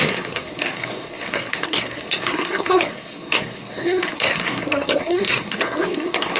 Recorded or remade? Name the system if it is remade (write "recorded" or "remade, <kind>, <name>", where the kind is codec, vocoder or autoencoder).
remade, codec, SNAC